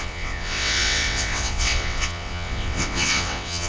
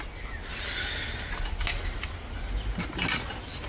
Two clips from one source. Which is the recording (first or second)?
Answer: second